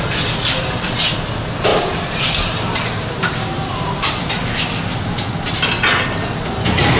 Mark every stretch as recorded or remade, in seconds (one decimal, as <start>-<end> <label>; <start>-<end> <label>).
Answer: 0.0-1.7 recorded; 1.7-4.4 remade; 4.4-5.9 recorded; 5.9-7.0 remade